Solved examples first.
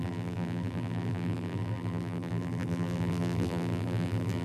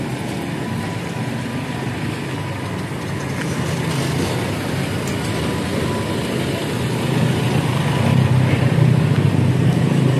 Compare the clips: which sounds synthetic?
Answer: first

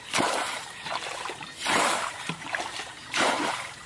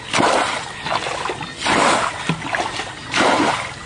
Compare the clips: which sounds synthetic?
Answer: first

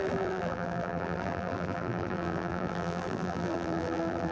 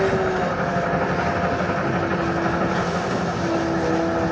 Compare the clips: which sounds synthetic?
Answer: first